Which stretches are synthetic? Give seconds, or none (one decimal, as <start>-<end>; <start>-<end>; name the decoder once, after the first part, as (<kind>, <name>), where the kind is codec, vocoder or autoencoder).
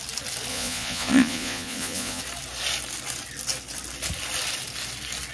0.5-2.2 (vocoder, Vocos)